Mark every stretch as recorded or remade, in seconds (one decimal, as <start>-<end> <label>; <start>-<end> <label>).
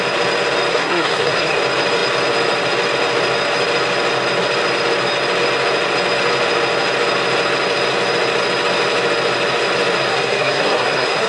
0.0-0.7 recorded; 0.7-1.6 remade; 1.6-10.1 recorded; 10.1-11.3 remade